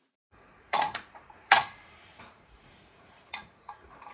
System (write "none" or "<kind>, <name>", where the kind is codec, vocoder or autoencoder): vocoder, Vocos